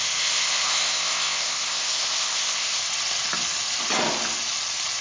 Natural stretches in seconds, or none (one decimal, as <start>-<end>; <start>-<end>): 2.8-5.0